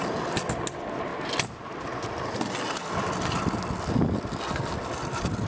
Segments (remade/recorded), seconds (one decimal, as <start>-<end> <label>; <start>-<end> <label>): 0.0-5.5 recorded